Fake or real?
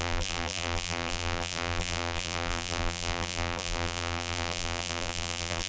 fake